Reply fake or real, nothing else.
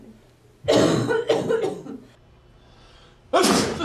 real